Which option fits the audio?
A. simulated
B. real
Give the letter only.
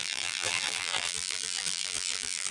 A